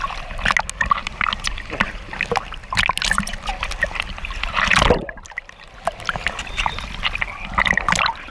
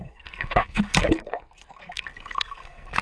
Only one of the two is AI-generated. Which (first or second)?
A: second